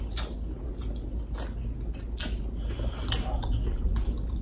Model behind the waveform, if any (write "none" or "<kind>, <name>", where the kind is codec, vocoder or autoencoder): none